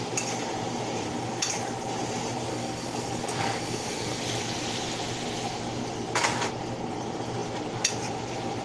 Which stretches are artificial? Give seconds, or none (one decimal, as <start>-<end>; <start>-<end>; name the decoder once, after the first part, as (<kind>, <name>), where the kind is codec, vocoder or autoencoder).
2.5-4.2 (codec, SNAC)